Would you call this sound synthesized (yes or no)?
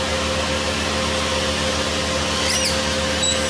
no